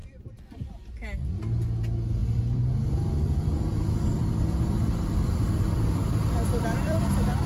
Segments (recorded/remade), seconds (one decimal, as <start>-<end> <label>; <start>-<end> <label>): 0.0-2.2 recorded; 2.2-3.5 remade; 3.5-4.2 recorded; 4.2-7.1 remade; 7.1-7.5 recorded